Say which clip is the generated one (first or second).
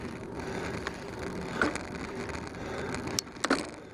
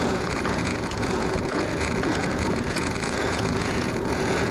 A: second